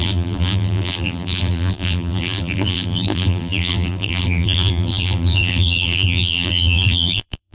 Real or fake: fake